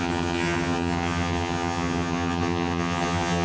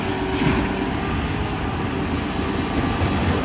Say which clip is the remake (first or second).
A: first